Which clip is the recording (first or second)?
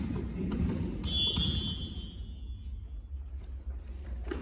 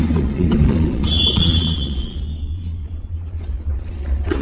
first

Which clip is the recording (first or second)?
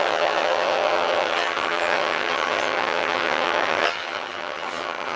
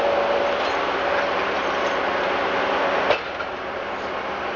second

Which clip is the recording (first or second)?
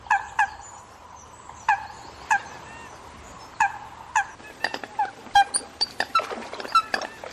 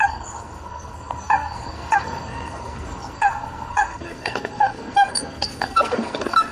first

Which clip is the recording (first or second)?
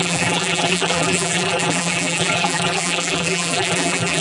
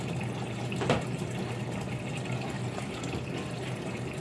second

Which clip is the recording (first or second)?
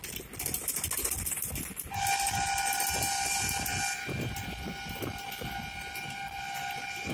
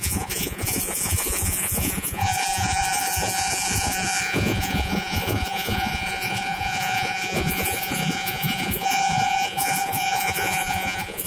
first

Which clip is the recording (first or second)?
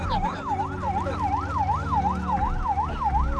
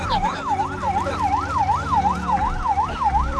first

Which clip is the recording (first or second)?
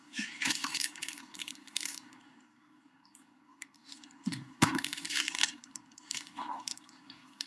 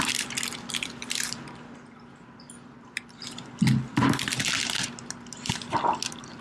second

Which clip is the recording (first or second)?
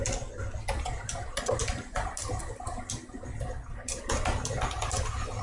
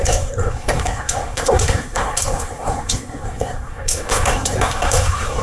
first